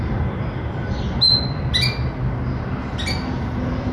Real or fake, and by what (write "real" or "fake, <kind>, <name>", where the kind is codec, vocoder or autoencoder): real